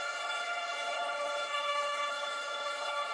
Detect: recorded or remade remade